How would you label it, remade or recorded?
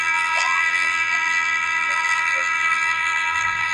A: remade